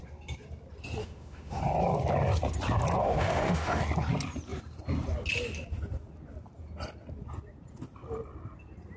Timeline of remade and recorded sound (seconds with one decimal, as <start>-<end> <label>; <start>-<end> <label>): 0.0-1.0 recorded; 1.0-1.6 remade; 1.6-3.0 recorded; 3.0-3.8 remade; 3.8-9.0 recorded